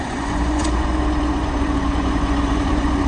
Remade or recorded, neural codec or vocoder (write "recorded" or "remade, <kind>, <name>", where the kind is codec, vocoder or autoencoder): remade, vocoder, Vocos